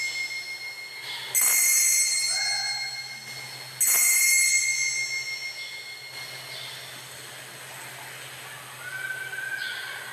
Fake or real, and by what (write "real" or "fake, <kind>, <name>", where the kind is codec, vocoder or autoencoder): real